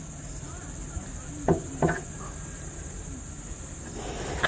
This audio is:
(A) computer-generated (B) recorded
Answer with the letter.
B